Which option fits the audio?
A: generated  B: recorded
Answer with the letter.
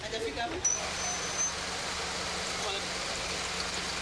B